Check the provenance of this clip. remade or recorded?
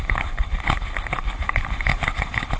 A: remade